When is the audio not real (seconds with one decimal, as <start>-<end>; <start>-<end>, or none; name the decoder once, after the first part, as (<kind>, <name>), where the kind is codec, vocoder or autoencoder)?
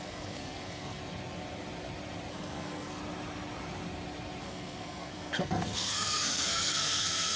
0.0-1.0 (codec, SNAC); 2.3-3.0; 4.4-7.4